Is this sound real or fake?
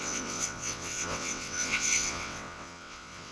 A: fake